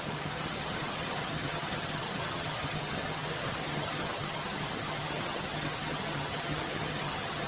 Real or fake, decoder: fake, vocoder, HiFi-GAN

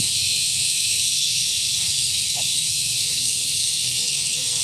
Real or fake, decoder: fake, codec, SNAC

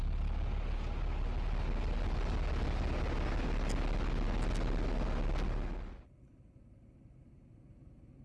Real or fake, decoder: real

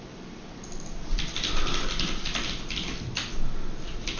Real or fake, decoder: real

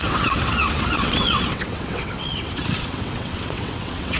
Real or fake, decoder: fake, vocoder, WaveNeXt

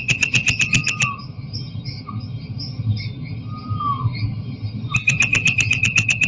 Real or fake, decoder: real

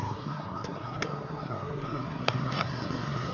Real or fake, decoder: fake, codec, SNAC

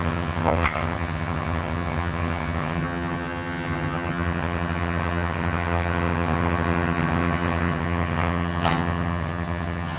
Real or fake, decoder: fake, vocoder, HiFi-GAN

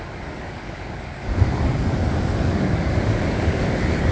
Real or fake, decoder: fake, codec, DAC